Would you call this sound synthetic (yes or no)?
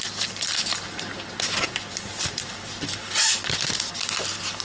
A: no